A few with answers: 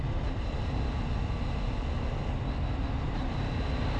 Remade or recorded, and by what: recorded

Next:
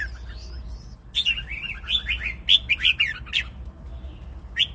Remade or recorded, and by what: recorded